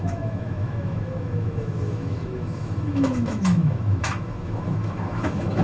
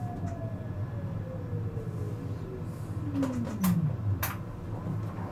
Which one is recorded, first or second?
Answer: second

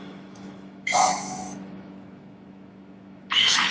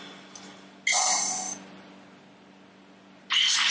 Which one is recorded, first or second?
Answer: second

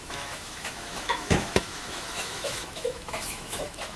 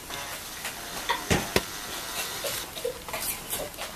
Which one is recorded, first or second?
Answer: second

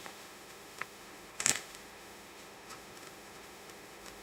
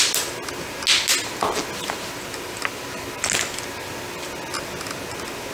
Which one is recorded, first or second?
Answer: second